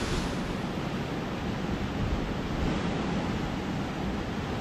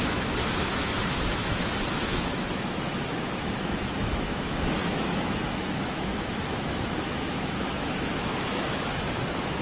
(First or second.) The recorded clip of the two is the first